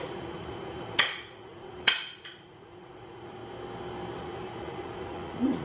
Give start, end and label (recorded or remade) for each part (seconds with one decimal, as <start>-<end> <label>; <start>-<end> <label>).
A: 0.0-3.4 remade; 3.4-4.2 recorded; 4.2-5.6 remade